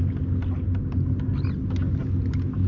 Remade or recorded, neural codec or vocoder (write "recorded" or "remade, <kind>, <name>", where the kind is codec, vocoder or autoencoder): recorded